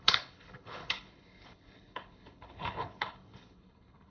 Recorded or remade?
remade